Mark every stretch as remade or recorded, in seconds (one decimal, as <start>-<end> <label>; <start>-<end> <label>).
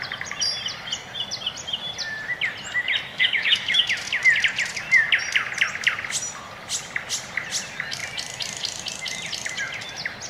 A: 0.0-3.1 recorded; 3.1-3.8 remade; 3.8-10.3 recorded